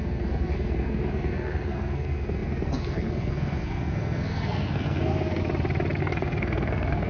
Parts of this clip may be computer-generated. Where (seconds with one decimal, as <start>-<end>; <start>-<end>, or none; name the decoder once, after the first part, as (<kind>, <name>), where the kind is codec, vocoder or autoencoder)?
0.0-5.4 (codec, SNAC); 6.0-7.1

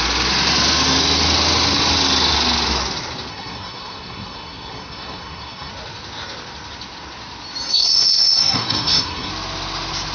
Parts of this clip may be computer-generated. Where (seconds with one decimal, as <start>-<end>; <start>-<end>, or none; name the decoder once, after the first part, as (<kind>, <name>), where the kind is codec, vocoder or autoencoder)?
3.3-5.7 (codec, SNAC); 7.7-9.3

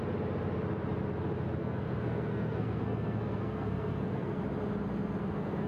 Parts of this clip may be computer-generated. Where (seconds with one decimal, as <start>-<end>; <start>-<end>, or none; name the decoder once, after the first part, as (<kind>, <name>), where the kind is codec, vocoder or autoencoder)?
1.6-4.4 (codec, SNAC); 5.2-5.7

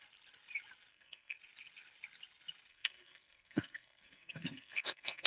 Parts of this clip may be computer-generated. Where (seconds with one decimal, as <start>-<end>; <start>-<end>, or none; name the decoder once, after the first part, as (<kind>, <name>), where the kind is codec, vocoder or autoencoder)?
0.9-1.4 (codec, SNAC); 2.7-5.3

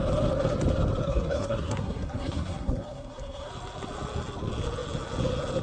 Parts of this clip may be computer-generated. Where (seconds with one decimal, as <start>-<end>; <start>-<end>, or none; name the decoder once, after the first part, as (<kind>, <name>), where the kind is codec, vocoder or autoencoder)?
1.0-3.5 (codec, SNAC)